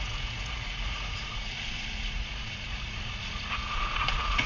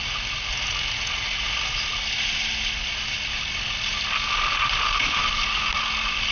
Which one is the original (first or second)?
second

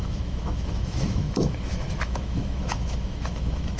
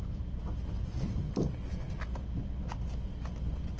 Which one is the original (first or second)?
second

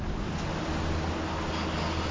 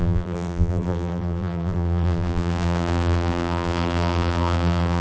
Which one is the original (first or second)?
first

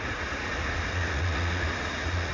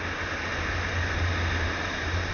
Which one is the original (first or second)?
second